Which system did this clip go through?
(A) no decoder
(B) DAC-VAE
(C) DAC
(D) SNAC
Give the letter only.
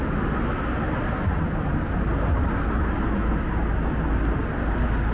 A